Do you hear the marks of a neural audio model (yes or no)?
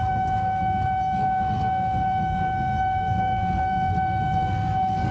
yes